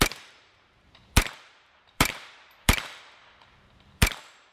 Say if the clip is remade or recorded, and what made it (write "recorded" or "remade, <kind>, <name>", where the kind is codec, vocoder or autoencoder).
remade, vocoder, BigVGAN v2